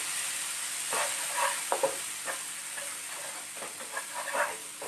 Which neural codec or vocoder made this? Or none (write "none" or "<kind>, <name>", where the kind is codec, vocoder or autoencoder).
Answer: none